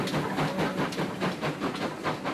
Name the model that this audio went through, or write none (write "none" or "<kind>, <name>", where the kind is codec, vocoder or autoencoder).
none